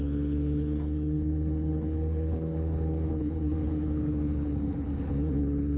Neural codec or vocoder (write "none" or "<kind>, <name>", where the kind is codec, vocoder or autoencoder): codec, HILCodec